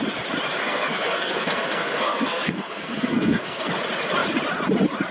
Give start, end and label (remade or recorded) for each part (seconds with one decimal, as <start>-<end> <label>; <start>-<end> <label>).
0.0-0.6 recorded; 0.6-3.7 remade; 3.7-5.1 recorded